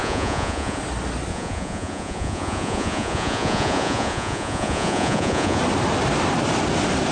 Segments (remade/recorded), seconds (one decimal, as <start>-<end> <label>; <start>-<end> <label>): 0.0-0.8 remade; 0.8-1.3 recorded; 1.3-5.6 remade; 5.6-7.1 recorded